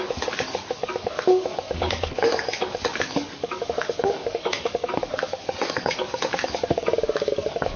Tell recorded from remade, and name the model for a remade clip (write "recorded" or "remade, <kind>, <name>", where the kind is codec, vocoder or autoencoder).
remade, codec, DAC